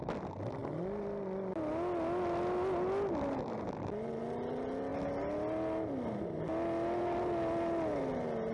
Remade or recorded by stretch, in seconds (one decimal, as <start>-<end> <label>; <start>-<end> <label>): 0.0-8.5 recorded